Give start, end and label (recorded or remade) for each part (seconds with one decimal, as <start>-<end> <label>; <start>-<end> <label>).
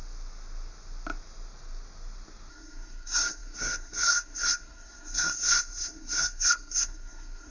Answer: 0.0-2.5 recorded; 2.5-7.5 remade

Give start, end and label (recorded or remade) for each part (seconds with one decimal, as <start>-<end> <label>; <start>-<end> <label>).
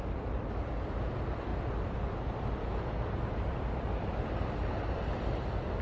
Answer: 0.0-5.8 recorded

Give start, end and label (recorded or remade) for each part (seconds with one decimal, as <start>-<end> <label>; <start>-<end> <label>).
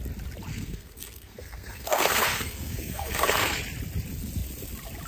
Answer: 0.0-0.5 recorded; 0.5-3.6 remade; 3.6-5.1 recorded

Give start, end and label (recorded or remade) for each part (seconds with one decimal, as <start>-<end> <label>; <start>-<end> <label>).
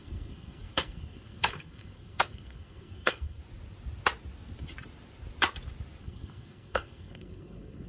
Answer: 0.0-3.4 remade; 3.4-6.0 recorded; 6.0-7.9 remade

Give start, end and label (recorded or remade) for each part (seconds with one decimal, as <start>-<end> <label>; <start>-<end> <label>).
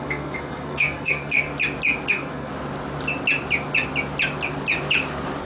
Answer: 0.0-1.5 remade; 1.5-2.1 recorded; 2.1-2.5 remade; 2.5-5.4 recorded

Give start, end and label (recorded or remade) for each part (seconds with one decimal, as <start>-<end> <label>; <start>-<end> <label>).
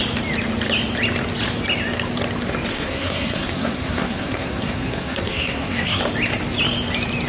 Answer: 0.0-2.7 recorded; 2.7-6.0 remade; 6.0-7.3 recorded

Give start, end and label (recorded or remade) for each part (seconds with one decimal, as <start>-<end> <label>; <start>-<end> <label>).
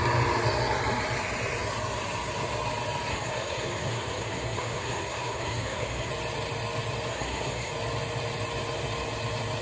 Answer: 0.0-3.1 recorded; 3.1-6.1 remade; 6.1-7.1 recorded; 7.1-7.7 remade; 7.7-9.6 recorded